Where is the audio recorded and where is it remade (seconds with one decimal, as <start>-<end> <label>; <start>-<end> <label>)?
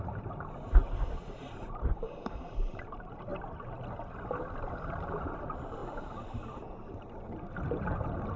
0.0-3.3 remade; 3.3-4.6 recorded; 4.6-5.8 remade; 5.8-6.9 recorded; 6.9-8.4 remade